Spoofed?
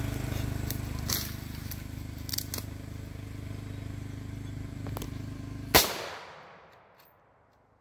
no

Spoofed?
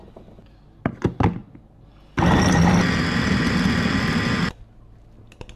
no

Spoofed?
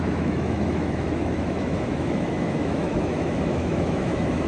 yes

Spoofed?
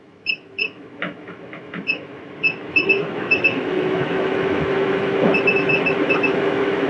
yes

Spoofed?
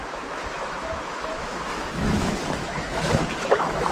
yes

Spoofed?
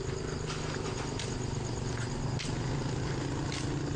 no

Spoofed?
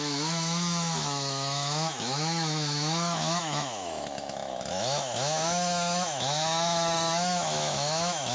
yes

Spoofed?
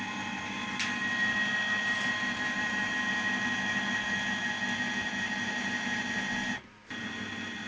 no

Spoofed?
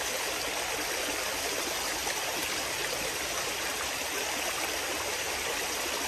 no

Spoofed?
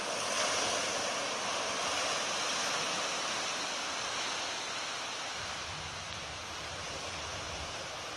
no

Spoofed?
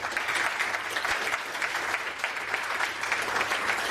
no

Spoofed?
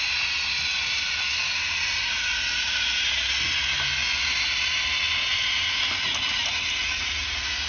no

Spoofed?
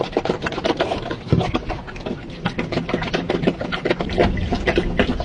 no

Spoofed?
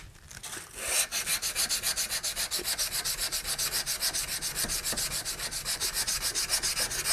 no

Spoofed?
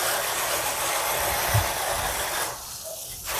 no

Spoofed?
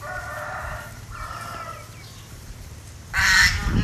no